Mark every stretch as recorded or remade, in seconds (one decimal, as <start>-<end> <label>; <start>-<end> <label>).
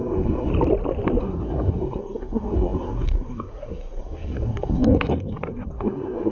0.0-0.5 remade; 0.5-1.2 recorded; 1.2-6.3 remade